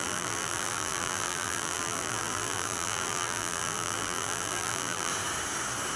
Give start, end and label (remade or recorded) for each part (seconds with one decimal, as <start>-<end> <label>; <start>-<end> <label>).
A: 0.0-5.1 remade; 5.1-6.0 recorded